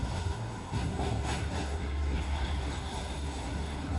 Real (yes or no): no